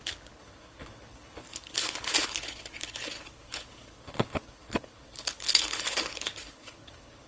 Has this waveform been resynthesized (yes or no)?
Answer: yes